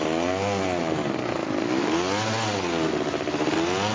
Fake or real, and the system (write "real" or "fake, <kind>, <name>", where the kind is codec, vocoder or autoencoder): real